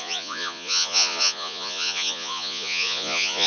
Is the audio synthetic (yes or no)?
yes